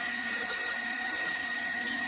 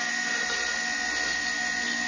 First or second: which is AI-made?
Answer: first